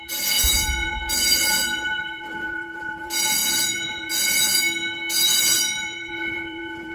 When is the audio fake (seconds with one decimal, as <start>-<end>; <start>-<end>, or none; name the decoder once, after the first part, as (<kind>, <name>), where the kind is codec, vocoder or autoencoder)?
0.0-4.6 (vocoder, Vocos); 5.3-6.9